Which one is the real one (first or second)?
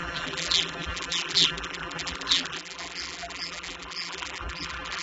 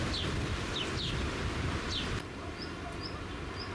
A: second